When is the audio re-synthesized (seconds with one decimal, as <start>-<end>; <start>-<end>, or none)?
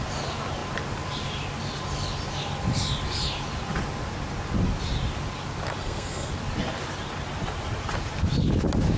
5.8-6.3